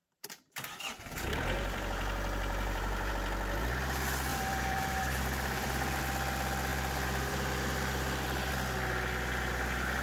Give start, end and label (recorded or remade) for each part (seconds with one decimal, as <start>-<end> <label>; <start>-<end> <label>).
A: 0.0-3.1 remade; 3.1-4.3 recorded; 4.3-6.0 remade; 6.0-6.7 recorded; 6.7-8.5 remade; 8.5-10.0 recorded